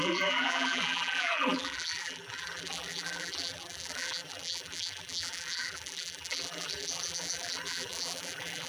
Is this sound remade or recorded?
remade